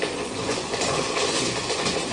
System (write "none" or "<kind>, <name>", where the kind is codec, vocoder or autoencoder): vocoder, Vocos